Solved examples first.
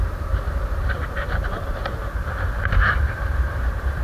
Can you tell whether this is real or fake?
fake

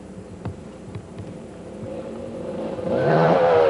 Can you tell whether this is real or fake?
fake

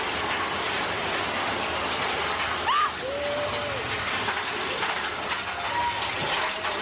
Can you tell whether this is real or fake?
real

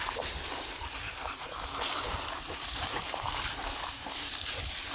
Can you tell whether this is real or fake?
fake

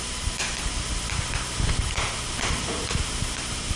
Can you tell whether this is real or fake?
fake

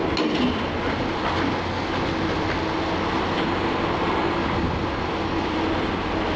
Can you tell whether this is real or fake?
real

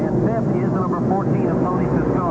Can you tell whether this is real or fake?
real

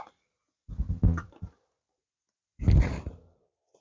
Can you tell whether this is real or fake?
real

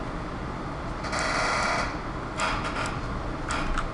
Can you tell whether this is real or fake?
real